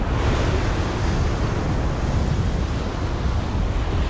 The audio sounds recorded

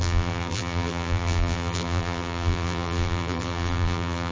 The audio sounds remade